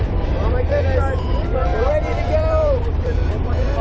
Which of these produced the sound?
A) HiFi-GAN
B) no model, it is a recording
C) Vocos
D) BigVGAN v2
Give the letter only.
D